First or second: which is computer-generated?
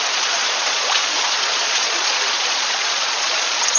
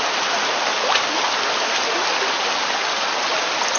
first